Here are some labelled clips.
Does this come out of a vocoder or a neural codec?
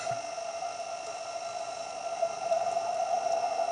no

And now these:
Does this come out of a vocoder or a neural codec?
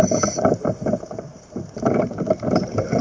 yes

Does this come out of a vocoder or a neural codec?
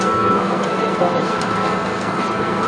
yes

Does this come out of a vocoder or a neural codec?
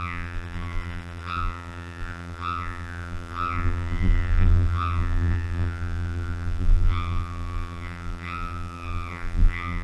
yes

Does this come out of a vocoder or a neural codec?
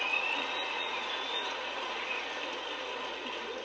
yes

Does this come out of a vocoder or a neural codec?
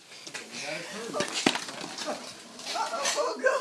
no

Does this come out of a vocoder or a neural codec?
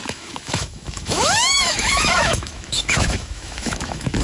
yes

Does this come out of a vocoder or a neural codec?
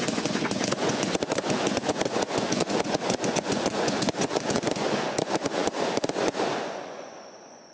yes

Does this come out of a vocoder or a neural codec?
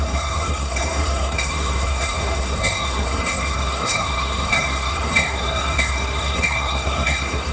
yes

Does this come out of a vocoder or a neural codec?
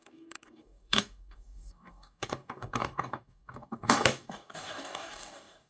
yes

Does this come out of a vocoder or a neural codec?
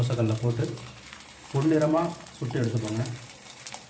yes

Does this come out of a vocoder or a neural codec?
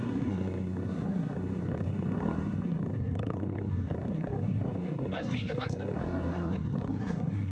yes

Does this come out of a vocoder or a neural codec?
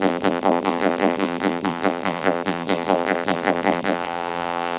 yes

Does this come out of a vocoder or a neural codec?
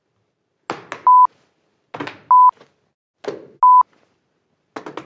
no